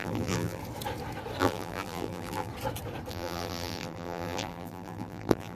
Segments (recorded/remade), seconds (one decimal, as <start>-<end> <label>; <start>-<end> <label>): 0.0-0.6 remade; 0.6-1.4 recorded; 1.4-2.5 remade; 2.5-3.1 recorded; 3.1-5.6 remade